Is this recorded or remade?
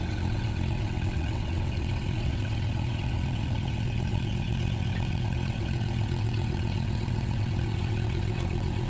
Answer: remade